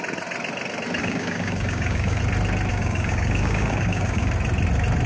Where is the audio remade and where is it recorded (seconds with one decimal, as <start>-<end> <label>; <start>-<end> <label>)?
0.0-1.0 recorded; 1.0-2.2 remade; 2.2-2.7 recorded; 2.7-4.3 remade; 4.3-5.1 recorded